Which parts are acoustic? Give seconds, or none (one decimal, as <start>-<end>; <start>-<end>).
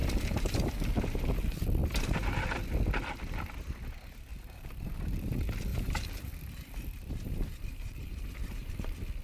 0.8-4.3; 5.3-5.7; 8.7-9.2